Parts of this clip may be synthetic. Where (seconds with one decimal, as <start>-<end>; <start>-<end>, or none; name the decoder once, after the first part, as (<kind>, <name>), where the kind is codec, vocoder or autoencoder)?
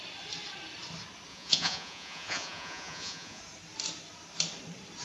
1.3-3.4 (vocoder, Vocos)